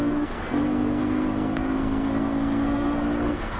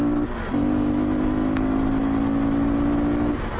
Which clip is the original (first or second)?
second